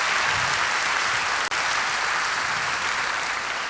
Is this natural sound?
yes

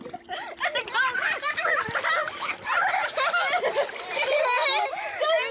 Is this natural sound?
yes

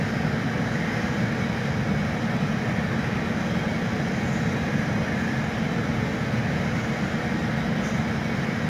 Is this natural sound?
yes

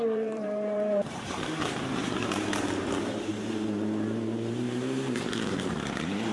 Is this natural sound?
no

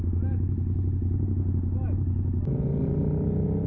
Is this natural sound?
yes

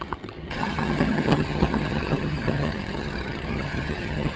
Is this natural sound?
no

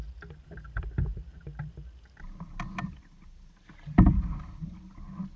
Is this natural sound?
yes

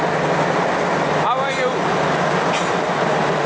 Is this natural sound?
yes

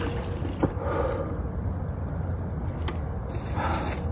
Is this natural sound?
yes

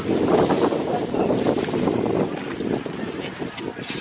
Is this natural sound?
yes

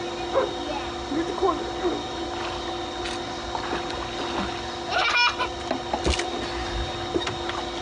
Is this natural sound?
yes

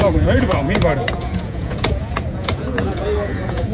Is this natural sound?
no